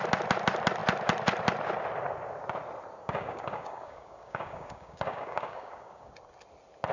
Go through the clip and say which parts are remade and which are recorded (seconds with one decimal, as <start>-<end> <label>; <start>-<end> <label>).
0.0-3.0 recorded; 3.0-6.1 remade; 6.1-6.9 recorded